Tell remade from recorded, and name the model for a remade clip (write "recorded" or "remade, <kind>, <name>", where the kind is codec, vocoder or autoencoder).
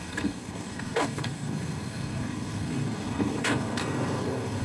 remade, codec, SNAC